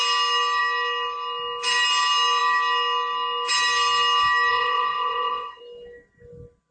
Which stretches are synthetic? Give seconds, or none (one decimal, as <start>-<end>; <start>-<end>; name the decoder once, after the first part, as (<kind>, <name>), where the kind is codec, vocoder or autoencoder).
4.5-5.6 (vocoder, WaveNeXt)